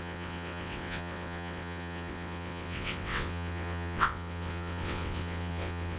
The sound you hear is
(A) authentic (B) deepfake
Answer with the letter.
B